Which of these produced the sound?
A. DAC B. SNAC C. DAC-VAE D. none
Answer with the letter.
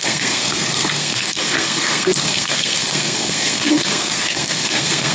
B